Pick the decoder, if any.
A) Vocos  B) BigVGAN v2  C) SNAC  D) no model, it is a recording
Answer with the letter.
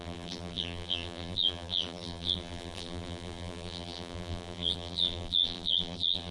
B